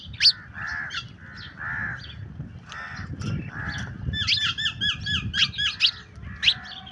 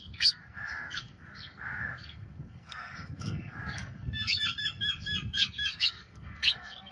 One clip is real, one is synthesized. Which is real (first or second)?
first